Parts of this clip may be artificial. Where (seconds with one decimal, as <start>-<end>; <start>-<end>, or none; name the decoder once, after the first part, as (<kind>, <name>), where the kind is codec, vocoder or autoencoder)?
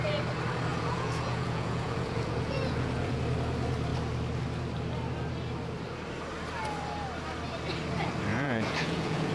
0.7-3.2 (vocoder, Vocos); 8.3-9.3